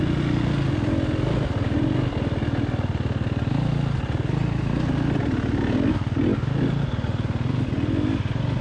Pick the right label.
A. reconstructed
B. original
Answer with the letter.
B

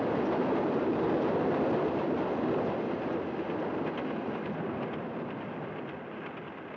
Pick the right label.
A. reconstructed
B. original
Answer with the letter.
B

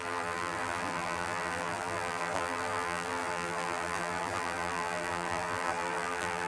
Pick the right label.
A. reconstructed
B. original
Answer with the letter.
A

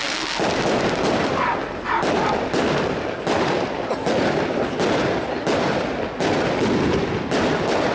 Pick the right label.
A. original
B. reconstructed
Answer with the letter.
A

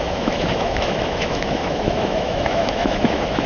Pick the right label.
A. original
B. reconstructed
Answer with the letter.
B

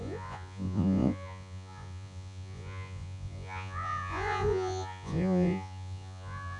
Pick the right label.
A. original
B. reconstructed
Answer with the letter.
B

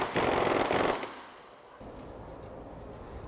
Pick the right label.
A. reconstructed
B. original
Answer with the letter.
B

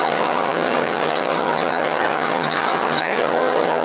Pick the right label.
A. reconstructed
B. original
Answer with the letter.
A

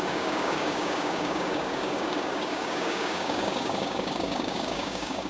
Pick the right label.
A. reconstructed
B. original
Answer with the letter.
A